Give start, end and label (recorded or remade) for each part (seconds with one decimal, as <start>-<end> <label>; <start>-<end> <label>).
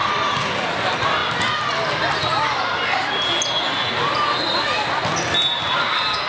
0.0-6.3 recorded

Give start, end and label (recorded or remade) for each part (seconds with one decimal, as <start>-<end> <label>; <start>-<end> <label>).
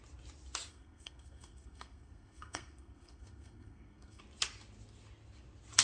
0.0-0.7 recorded; 0.7-4.2 remade; 4.2-5.8 recorded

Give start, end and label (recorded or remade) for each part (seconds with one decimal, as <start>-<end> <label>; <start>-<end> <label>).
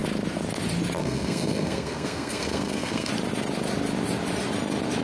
0.0-1.0 recorded; 1.0-3.1 remade; 3.1-5.0 recorded